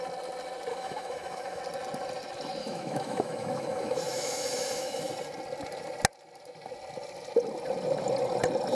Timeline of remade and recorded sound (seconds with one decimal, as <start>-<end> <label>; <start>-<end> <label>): 0.0-0.7 recorded; 0.7-1.6 remade; 1.6-2.6 recorded; 2.6-5.1 remade; 5.1-8.7 recorded